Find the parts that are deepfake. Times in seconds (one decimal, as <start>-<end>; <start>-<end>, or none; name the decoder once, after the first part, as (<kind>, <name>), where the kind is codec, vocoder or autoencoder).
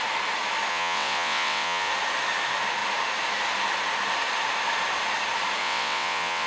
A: 0.7-1.9 (vocoder, WaveNeXt); 5.6-6.5